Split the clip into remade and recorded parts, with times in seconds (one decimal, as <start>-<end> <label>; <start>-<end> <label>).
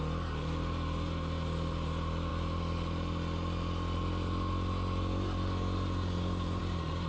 0.0-7.1 recorded